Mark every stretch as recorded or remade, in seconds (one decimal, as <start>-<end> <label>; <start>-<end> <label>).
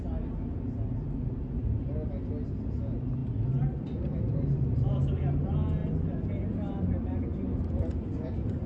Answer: 0.0-3.2 recorded; 3.2-4.6 remade; 4.6-8.7 recorded